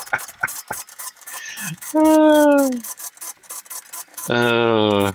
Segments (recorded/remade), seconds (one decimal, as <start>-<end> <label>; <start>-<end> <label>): 0.0-0.9 recorded; 0.9-3.0 remade; 3.0-4.1 recorded; 4.1-5.1 remade